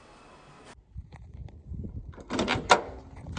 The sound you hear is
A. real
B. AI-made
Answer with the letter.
A